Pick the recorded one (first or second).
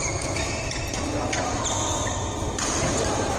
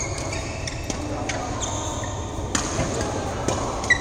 second